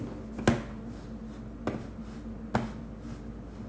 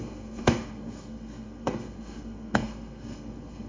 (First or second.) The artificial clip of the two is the second